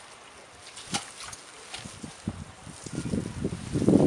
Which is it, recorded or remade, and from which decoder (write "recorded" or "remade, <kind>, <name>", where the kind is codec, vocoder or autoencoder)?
recorded